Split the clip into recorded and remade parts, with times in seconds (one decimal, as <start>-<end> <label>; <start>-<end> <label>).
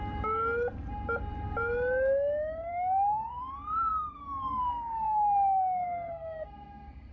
0.0-2.7 recorded; 2.7-3.4 remade; 3.4-3.9 recorded; 3.9-7.1 remade